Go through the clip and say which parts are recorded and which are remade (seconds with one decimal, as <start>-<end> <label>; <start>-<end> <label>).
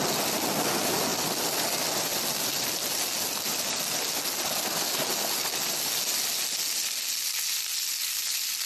0.0-8.7 recorded